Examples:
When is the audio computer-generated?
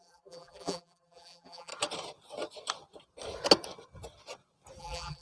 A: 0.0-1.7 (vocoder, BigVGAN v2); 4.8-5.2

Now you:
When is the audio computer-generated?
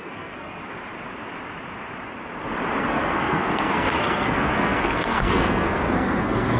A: 0.0-0.6 (codec, SNAC); 2.8-6.6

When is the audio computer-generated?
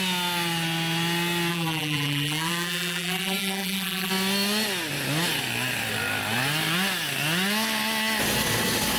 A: 1.5-4.1 (vocoder, BigVGAN v2)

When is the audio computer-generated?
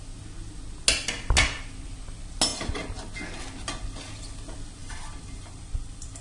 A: 4.8-6.2 (vocoder, BigVGAN v2)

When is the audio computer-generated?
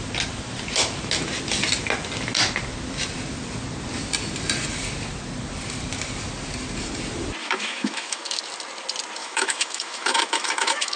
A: 7.4-8.4 (autoencoder, DAC-VAE); 9.2-11.0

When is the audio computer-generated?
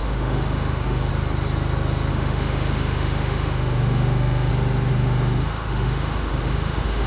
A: 0.0-1.1 (autoencoder, DAC-VAE); 2.1-4.5; 4.9-7.1